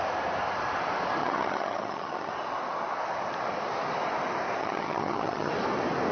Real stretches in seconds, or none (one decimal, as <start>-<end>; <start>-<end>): 0.0-1.2; 2.3-4.6; 5.5-6.1